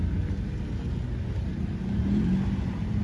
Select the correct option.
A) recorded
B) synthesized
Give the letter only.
A